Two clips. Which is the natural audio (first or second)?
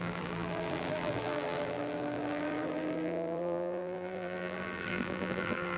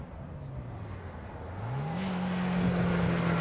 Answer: second